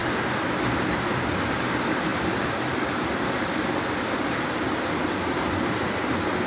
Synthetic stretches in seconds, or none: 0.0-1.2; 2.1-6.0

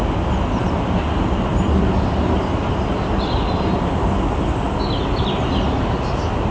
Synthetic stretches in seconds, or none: none